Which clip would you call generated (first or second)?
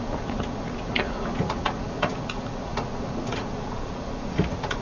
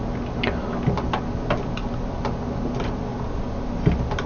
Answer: first